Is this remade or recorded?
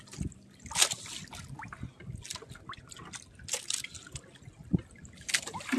recorded